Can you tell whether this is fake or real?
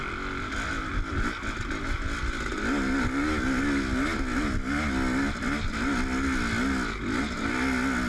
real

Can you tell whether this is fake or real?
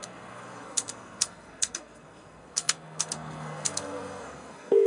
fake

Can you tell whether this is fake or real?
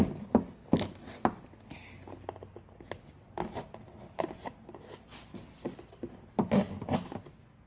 real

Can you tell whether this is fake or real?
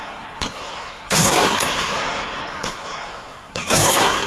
fake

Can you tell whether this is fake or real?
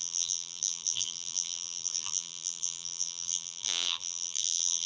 fake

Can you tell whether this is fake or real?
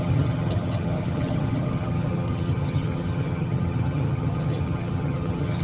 fake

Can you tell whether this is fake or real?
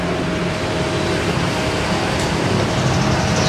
real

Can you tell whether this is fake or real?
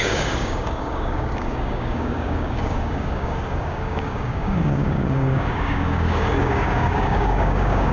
fake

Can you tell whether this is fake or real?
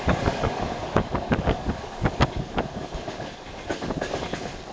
fake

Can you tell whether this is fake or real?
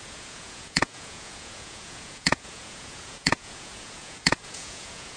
fake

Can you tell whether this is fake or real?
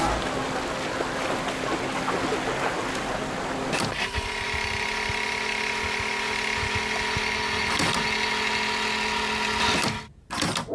real